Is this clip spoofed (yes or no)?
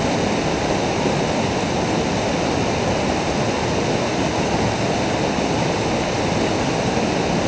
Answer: no